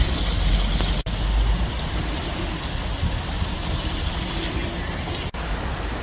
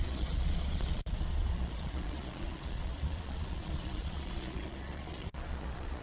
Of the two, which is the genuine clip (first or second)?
first